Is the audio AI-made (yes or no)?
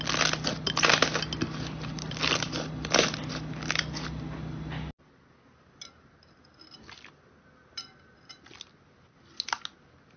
no